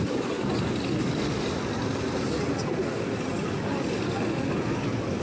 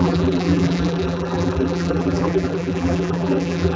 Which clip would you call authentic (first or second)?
first